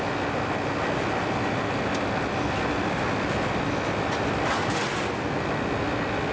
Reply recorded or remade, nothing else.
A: recorded